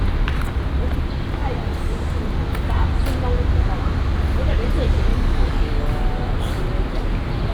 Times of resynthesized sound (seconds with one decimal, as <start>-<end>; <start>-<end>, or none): 5.1-5.8